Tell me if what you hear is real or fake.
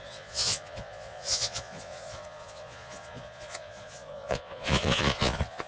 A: fake